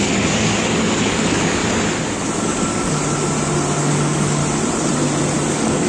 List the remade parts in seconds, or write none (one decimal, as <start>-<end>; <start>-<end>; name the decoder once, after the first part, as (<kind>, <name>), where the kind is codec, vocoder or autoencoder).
0.0-1.6 (codec, DAC); 2.4-3.0; 3.8-4.4; 5.5-5.9

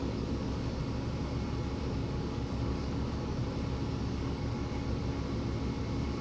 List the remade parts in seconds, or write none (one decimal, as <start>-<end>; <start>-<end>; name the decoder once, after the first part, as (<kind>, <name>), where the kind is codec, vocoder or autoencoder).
0.0-0.8 (codec, DAC); 1.8-3.4; 3.9-5.0; 5.8-6.2

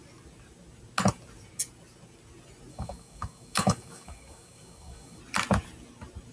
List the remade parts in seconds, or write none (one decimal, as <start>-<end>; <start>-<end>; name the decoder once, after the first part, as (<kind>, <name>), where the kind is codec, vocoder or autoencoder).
2.7-5.2 (codec, DAC)

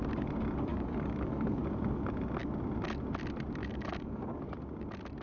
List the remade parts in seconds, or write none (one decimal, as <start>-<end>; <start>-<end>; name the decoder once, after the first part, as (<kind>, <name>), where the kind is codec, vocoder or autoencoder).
0.7-1.6 (codec, DAC); 3.6-4.4

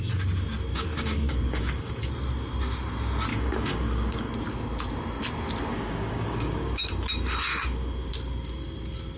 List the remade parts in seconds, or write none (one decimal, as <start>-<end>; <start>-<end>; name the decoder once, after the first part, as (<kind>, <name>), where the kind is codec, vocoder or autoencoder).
0.7-2.1 (codec, DAC); 3.3-4.3; 5.7-6.9; 7.5-8.1

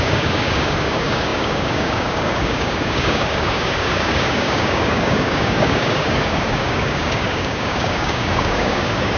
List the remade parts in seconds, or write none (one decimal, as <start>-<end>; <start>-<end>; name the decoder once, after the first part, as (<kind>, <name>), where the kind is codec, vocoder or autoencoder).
0.0-9.2 (codec, DAC)

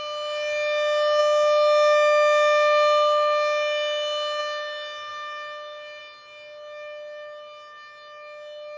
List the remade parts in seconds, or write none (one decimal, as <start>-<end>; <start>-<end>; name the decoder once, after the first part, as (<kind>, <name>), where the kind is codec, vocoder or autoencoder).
none